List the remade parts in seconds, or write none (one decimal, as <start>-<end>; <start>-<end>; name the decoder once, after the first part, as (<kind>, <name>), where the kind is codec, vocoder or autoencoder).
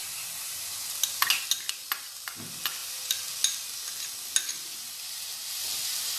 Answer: 0.0-0.6 (vocoder, BigVGAN v2)